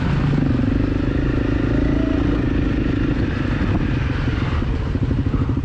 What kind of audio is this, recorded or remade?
recorded